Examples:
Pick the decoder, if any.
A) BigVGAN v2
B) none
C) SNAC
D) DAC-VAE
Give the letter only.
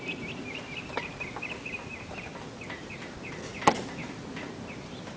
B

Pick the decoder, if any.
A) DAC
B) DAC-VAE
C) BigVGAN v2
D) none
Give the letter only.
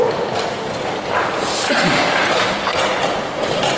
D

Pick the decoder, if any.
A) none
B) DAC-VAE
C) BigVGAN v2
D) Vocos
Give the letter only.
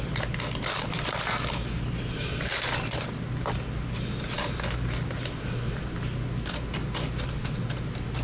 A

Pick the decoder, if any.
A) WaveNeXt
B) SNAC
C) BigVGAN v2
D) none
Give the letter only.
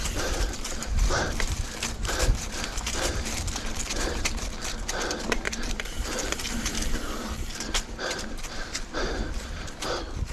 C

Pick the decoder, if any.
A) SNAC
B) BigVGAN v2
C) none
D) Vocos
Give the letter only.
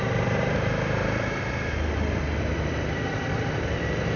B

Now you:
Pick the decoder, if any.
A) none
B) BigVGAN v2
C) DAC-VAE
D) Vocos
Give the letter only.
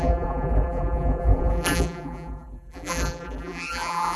B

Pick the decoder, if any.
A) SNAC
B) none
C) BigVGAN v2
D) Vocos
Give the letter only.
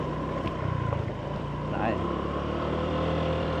C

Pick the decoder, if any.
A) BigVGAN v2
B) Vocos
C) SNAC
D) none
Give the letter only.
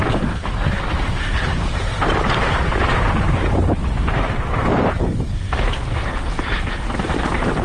A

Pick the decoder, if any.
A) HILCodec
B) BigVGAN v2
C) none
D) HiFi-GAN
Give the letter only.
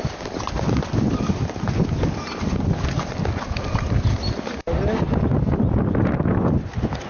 C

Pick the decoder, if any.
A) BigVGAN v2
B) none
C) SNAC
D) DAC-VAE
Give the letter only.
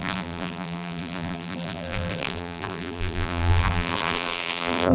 A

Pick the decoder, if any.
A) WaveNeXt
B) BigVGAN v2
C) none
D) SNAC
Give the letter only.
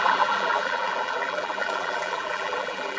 B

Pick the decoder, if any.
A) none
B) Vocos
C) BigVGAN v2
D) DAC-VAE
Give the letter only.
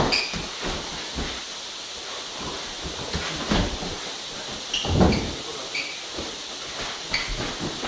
A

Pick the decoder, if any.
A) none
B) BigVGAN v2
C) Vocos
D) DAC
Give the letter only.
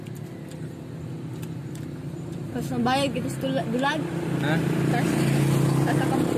A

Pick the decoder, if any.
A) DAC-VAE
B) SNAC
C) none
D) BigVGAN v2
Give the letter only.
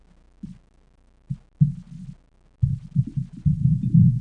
C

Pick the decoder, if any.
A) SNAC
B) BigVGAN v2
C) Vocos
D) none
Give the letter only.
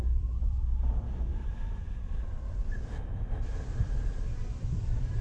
B